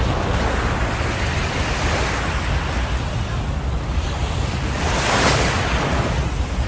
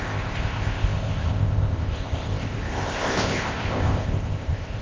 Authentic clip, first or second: first